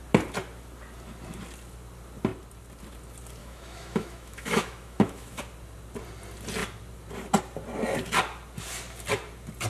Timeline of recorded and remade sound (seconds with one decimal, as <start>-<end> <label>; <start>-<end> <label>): 0.0-3.4 recorded; 3.4-5.4 remade; 5.4-9.7 recorded